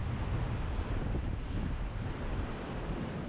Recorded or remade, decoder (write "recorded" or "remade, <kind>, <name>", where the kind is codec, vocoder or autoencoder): recorded